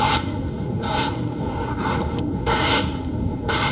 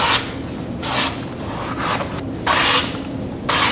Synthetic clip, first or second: first